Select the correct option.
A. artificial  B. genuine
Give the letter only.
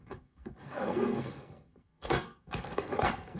A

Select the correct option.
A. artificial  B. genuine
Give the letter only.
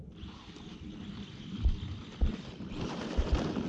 B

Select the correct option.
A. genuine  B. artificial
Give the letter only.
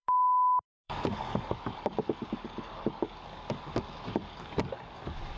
B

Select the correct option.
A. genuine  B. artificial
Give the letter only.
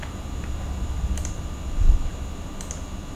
A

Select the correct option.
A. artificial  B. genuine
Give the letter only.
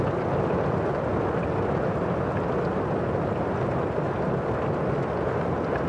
B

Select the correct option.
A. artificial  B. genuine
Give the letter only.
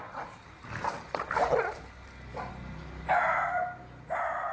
B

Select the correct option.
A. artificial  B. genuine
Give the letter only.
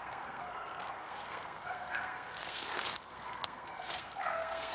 A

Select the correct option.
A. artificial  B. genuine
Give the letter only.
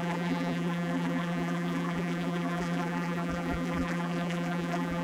A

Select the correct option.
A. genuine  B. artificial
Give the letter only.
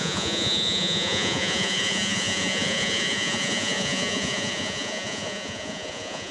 B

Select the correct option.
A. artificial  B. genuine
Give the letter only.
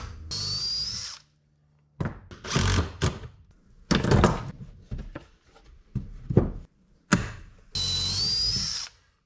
B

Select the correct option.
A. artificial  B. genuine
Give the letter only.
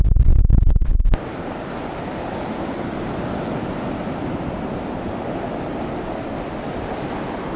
B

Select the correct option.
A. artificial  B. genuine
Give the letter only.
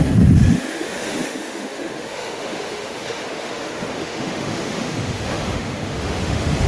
A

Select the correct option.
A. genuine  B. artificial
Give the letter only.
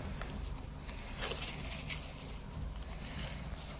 A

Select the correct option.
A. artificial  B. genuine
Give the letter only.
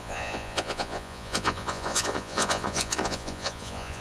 A